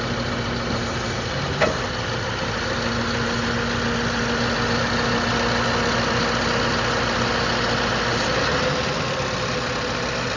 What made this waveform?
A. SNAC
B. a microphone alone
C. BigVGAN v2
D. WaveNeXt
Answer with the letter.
B